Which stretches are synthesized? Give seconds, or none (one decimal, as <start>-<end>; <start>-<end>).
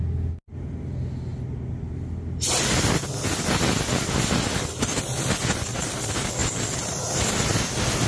none